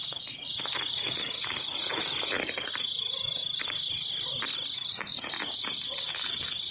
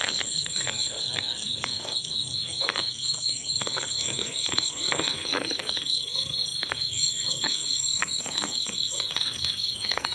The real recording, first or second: first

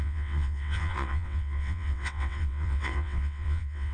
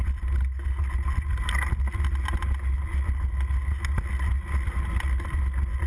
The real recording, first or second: second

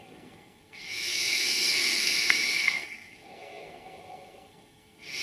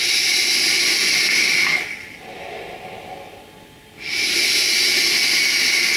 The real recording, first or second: second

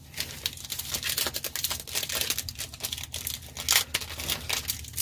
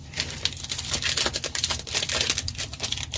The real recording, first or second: first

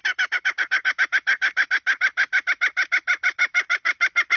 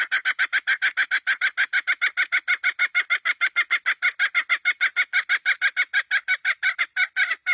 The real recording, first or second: second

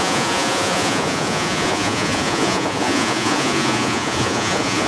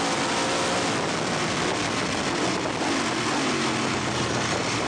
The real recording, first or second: second